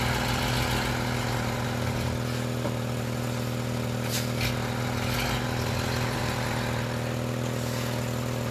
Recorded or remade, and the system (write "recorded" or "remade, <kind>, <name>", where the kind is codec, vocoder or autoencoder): recorded